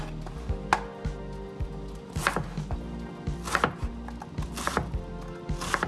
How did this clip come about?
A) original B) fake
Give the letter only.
A